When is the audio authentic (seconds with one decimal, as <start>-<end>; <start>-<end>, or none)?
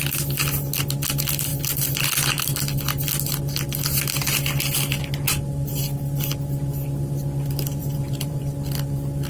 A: 0.0-7.8; 8.4-9.3